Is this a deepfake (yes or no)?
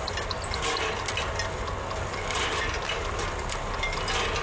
no